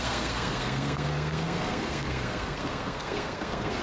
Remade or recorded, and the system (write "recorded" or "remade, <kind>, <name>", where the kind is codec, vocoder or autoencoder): remade, codec, SNAC